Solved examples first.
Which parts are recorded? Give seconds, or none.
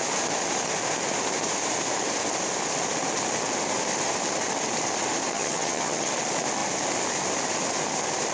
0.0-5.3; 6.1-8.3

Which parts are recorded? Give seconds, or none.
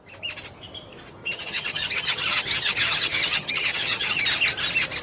0.0-1.2; 4.2-5.0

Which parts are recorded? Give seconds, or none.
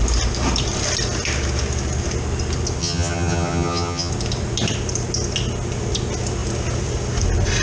0.0-2.8; 4.1-7.6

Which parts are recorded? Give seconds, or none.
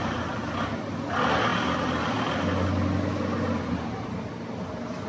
0.0-5.1